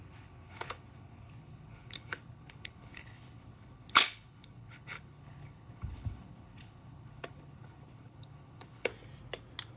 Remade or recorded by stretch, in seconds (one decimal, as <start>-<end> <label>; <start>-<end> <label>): 0.0-8.9 remade; 8.9-9.8 recorded